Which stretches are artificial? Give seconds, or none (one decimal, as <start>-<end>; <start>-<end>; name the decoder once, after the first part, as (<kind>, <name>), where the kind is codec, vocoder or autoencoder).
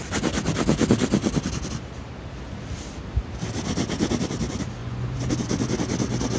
4.8-5.3 (vocoder, Vocos)